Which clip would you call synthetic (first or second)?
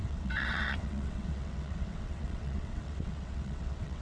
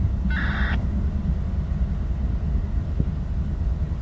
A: first